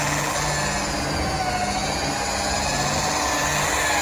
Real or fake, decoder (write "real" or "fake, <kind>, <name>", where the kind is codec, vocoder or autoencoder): real